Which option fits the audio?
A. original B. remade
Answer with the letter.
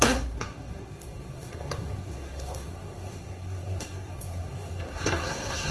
B